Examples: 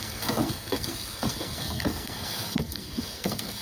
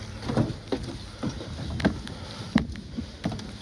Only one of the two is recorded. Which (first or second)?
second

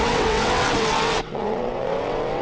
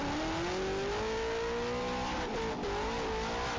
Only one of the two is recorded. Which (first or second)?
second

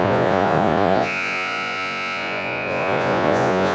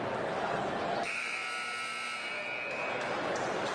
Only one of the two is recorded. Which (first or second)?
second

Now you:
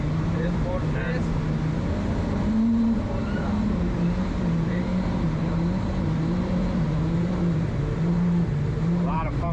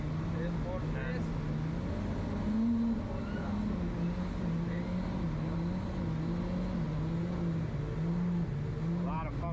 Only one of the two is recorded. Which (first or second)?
second